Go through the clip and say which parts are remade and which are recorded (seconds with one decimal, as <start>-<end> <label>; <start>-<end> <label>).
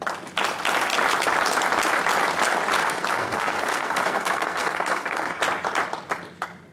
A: 0.0-2.8 recorded; 2.8-5.4 remade; 5.4-6.7 recorded